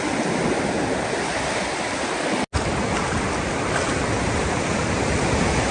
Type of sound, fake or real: real